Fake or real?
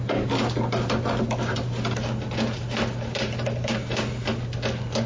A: real